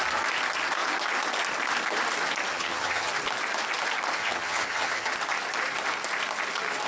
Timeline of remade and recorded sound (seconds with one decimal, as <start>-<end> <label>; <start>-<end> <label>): 0.0-2.5 recorded; 2.5-3.1 remade; 3.1-4.2 recorded; 4.2-5.1 remade; 5.1-6.9 recorded